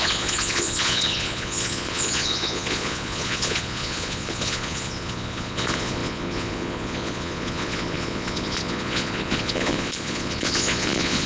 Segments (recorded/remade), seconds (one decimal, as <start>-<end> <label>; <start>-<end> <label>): 0.0-11.3 remade